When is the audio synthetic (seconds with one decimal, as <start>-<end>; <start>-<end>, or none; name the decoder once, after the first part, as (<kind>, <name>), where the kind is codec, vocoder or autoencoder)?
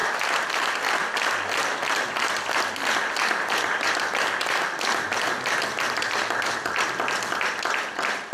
0.0-0.5 (vocoder, BigVGAN v2)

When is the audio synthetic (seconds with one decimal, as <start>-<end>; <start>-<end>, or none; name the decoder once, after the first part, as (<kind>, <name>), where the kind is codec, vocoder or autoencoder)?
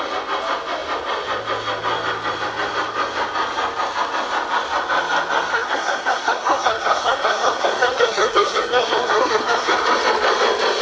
5.5-9.7 (codec, SNAC)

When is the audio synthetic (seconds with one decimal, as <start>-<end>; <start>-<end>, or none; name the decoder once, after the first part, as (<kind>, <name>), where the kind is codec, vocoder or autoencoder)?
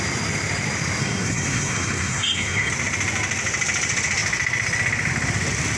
1.0-2.7 (codec, SNAC)